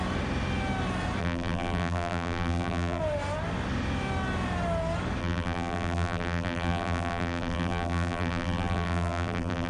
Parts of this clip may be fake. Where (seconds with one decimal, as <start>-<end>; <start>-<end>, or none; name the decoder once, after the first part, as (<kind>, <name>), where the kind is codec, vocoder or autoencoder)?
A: 1.2-3.0 (vocoder, BigVGAN v2); 5.2-9.7